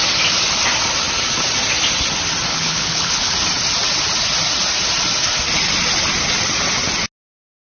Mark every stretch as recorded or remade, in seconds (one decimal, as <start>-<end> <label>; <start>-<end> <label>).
0.0-2.5 recorded; 2.5-3.3 remade; 3.3-7.7 recorded